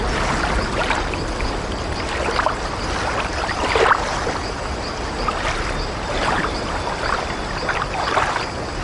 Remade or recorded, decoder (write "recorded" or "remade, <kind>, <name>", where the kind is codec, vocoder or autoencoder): recorded